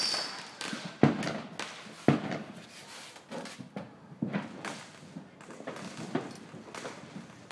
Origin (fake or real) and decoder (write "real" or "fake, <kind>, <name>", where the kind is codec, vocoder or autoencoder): real